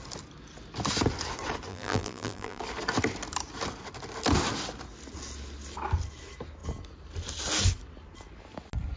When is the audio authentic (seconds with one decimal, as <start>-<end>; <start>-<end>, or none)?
0.0-1.7; 2.6-9.0